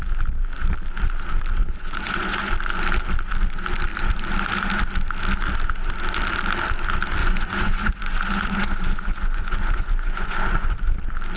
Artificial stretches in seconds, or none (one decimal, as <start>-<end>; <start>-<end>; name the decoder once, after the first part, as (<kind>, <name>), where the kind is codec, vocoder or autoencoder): 1.6-2.5 (vocoder, Vocos); 7.2-10.8